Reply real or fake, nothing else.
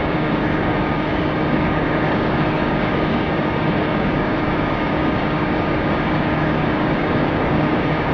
fake